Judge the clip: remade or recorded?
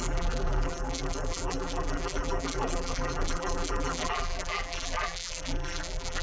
remade